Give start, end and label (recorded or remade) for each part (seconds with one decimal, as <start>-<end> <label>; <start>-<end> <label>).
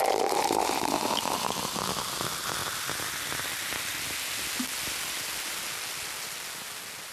0.0-7.1 recorded